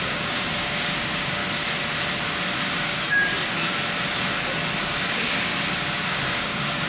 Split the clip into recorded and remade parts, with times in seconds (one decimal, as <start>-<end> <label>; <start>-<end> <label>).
0.0-1.4 remade; 1.4-2.6 recorded; 2.6-3.3 remade; 3.3-4.8 recorded; 4.8-5.5 remade; 5.5-6.2 recorded; 6.2-6.9 remade